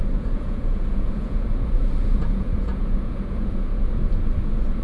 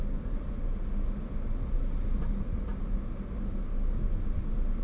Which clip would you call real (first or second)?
second